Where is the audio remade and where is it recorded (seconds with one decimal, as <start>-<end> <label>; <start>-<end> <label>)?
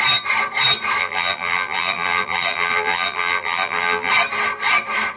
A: 0.0-1.0 recorded; 1.0-4.1 remade; 4.1-5.2 recorded